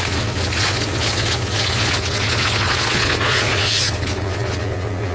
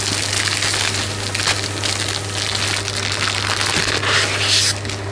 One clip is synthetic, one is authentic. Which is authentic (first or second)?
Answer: second